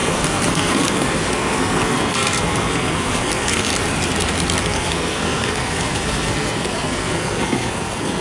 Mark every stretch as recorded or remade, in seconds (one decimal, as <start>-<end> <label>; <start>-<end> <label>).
0.0-3.7 remade; 3.7-4.6 recorded; 4.6-8.2 remade